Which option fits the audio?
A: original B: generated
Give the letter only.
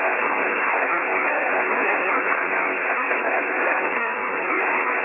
B